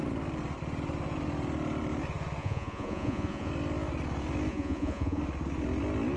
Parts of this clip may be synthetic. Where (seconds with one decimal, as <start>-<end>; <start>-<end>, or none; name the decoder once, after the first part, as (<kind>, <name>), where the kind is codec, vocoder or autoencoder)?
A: 2.4-3.5 (vocoder, Vocos); 4.5-5.2